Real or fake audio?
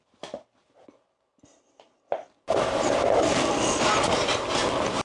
real